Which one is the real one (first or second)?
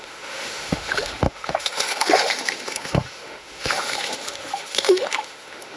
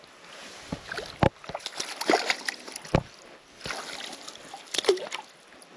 second